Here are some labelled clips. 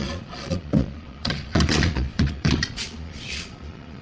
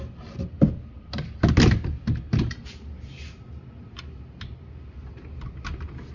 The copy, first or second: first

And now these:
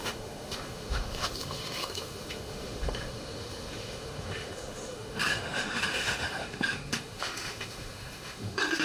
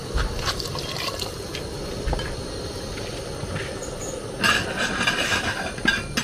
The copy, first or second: first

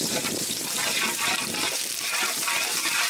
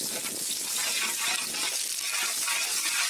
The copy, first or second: first